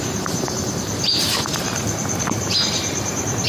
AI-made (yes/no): yes